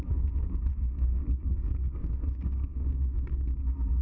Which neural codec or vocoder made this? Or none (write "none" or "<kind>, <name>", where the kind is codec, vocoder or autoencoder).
codec, SNAC